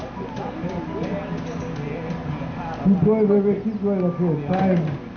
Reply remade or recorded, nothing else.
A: recorded